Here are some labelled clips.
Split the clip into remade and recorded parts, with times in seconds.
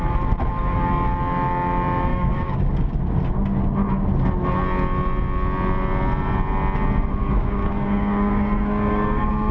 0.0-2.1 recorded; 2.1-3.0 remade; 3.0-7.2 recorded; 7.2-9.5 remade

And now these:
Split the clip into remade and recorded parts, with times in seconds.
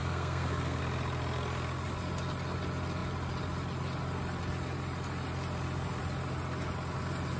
0.0-0.8 remade; 0.8-7.4 recorded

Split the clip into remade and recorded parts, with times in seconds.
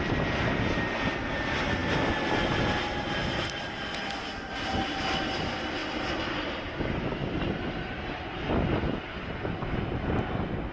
0.0-10.7 recorded